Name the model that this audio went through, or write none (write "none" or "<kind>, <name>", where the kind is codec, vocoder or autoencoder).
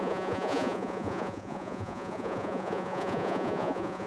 vocoder, Vocos